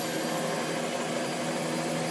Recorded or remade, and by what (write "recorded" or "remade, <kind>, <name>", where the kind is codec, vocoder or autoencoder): recorded